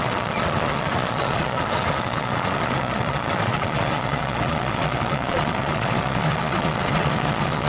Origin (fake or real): fake